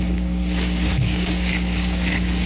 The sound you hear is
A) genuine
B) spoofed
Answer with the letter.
B